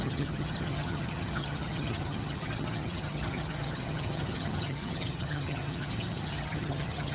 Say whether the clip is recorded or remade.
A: remade